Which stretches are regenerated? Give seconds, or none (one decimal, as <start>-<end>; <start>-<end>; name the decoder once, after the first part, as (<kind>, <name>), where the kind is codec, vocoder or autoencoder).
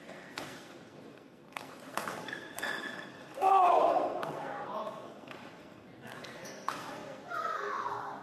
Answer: 0.0-8.2 (codec, SNAC)